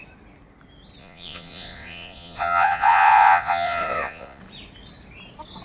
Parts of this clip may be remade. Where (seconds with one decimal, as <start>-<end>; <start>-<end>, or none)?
1.0-4.4